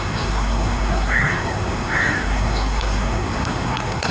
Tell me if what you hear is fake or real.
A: fake